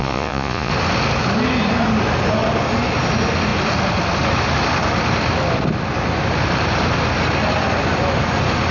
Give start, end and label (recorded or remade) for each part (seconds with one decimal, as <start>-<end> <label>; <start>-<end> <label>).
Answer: 0.0-0.7 remade; 0.7-8.7 recorded